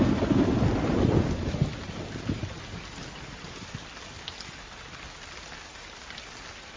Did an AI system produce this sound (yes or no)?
no